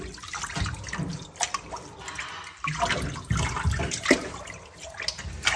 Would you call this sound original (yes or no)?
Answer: yes